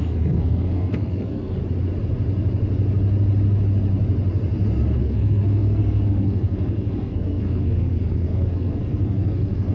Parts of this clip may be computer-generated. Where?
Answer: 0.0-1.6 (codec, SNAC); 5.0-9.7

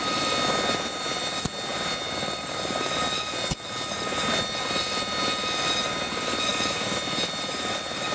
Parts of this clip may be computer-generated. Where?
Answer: none

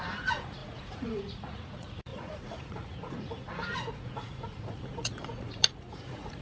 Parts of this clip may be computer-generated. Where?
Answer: 0.0-6.4 (vocoder, Vocos)

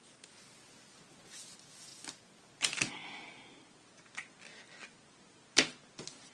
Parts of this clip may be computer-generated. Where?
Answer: none

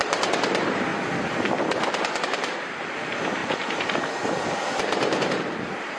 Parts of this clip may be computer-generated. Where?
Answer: 0.0-0.9 (vocoder, BigVGAN v2); 2.2-6.0

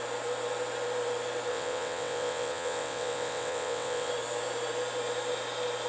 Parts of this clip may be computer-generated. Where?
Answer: 1.5-4.1 (vocoder, WaveNeXt)

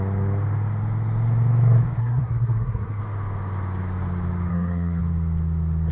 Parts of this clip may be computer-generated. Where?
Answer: 2.0-3.0 (codec, SNAC); 4.5-5.0

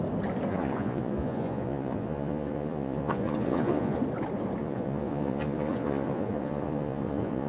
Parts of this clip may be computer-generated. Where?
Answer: 0.5-4.0 (vocoder, Vocos); 4.6-7.5